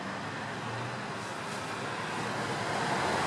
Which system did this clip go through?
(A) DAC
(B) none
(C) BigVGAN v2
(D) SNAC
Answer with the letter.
B